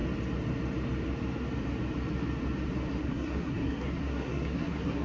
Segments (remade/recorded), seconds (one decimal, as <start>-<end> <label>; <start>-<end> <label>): 0.0-3.0 recorded; 3.0-5.0 remade